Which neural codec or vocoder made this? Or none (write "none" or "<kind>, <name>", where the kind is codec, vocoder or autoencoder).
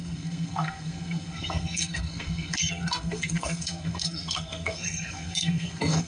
codec, SNAC